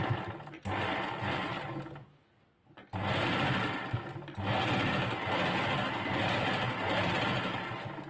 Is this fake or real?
real